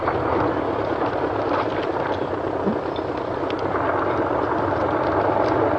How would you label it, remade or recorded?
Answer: recorded